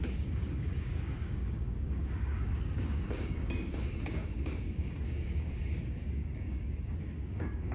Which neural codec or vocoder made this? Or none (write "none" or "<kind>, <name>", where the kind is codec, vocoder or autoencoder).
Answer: codec, DAC